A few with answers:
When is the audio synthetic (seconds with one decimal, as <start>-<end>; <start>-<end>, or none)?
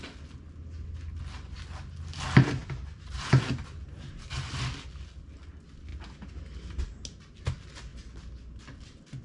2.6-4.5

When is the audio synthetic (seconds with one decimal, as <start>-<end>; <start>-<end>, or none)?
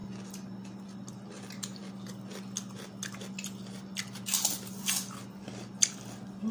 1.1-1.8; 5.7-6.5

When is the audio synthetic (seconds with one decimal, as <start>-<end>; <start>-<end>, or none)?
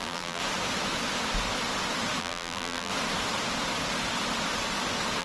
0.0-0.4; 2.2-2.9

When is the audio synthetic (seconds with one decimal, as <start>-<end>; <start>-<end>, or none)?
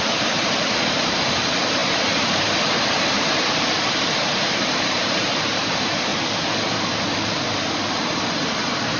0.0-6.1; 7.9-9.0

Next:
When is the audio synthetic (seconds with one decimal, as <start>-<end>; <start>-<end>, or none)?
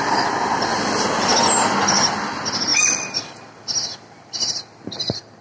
2.7-3.3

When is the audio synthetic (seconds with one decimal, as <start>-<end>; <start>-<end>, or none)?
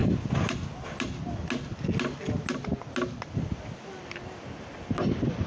none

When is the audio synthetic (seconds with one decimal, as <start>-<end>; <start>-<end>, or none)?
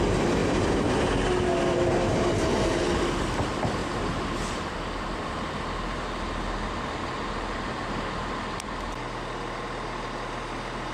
0.4-1.1; 3.8-5.3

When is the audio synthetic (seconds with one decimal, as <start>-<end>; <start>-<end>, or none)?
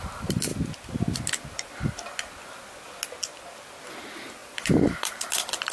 0.0-0.5; 3.9-5.7